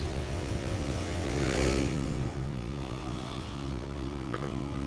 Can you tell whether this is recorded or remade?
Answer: remade